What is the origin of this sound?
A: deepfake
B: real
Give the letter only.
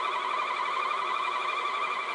B